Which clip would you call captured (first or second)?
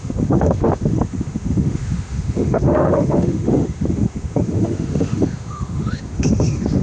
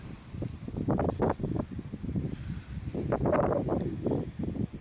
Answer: second